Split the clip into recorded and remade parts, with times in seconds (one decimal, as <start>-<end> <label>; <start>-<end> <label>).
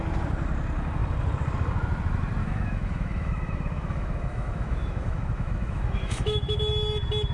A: 0.0-2.4 recorded; 2.4-6.6 remade; 6.6-7.3 recorded